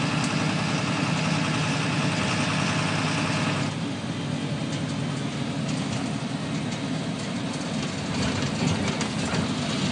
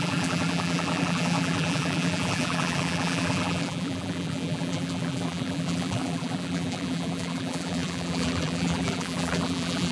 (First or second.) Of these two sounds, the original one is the first